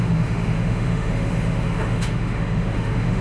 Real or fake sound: fake